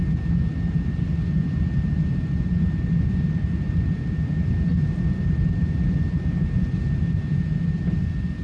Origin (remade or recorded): recorded